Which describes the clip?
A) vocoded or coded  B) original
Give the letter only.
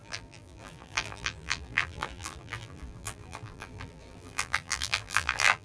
A